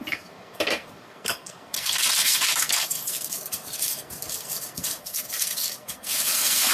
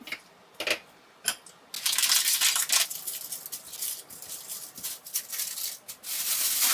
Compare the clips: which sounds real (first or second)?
second